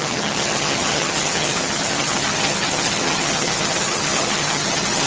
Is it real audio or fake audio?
fake